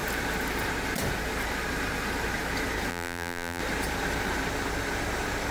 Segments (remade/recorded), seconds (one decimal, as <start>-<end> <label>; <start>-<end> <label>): 0.0-2.9 recorded; 2.9-3.6 remade; 3.6-5.5 recorded